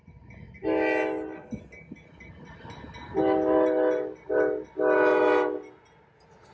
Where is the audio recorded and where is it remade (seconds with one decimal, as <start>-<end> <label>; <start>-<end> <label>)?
0.0-6.5 recorded